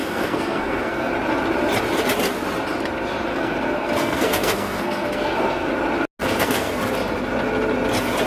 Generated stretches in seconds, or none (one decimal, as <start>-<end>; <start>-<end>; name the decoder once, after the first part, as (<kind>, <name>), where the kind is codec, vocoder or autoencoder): 0.0-1.1 (codec, SNAC); 3.3-5.7; 6.2-6.8